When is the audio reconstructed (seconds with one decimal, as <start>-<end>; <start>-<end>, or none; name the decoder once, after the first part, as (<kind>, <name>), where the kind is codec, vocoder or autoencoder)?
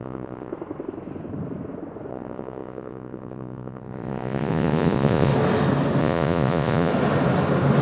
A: 0.0-0.5 (vocoder, Vocos); 2.1-5.3; 6.0-6.9